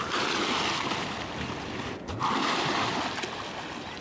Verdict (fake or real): real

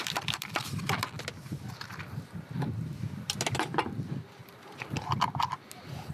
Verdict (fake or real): fake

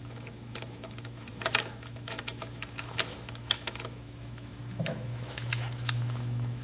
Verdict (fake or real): fake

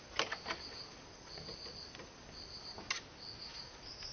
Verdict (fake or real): real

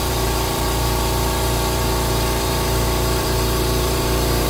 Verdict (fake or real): fake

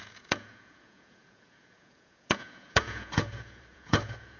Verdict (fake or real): fake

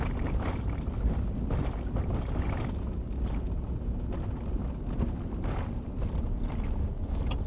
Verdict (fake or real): real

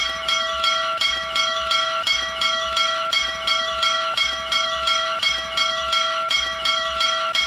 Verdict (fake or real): fake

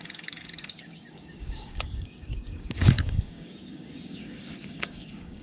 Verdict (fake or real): fake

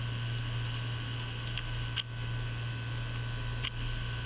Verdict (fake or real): real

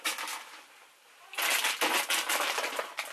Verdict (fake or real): real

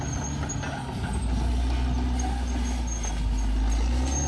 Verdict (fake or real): real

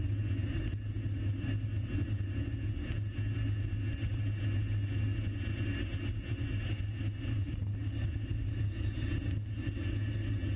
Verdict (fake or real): real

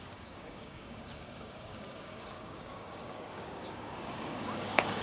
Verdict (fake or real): fake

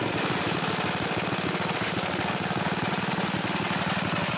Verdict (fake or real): real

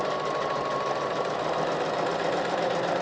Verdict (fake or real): real